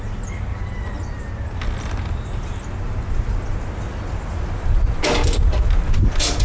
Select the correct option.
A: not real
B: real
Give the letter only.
B